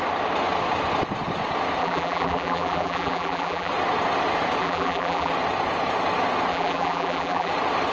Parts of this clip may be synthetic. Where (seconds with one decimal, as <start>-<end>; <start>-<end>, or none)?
1.8-3.7; 4.6-5.3; 6.5-7.5